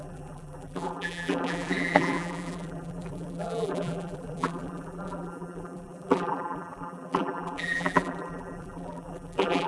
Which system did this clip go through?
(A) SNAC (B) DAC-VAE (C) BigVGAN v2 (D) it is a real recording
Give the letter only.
C